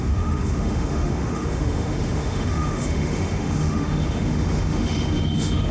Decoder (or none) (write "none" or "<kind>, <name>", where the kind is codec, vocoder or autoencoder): autoencoder, DAC-VAE